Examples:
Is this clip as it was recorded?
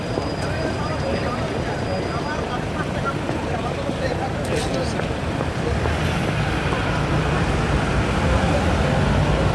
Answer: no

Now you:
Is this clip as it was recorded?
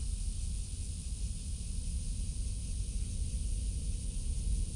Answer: yes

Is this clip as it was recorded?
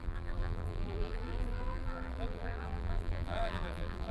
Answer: no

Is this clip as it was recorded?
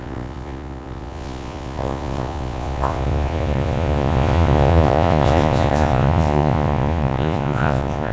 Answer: no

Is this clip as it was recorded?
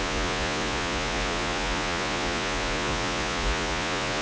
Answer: no